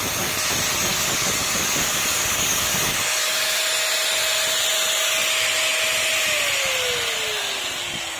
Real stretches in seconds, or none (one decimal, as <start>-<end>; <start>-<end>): 0.0-0.9; 3.6-8.2